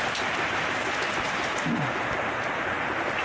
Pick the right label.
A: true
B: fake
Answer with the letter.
A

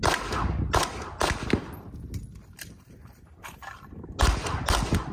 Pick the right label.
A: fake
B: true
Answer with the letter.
B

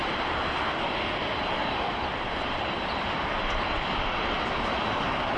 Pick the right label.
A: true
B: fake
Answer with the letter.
B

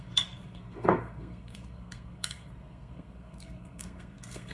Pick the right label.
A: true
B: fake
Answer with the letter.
B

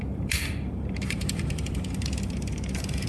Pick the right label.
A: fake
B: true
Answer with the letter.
A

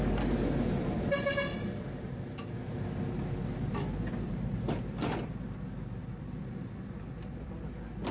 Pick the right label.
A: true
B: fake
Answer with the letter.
A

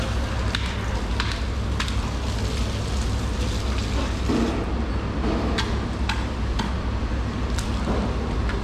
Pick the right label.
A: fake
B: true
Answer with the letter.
B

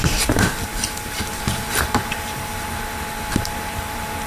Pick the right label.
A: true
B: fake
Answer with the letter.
B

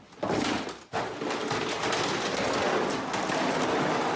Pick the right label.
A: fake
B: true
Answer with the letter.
B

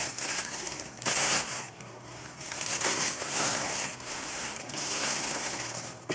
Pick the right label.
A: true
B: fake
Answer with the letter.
B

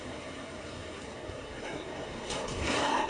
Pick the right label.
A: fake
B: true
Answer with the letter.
A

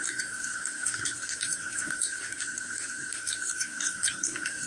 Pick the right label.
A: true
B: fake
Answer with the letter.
B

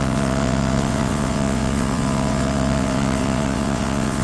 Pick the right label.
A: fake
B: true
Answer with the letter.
A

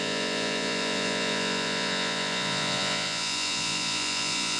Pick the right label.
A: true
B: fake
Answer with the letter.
B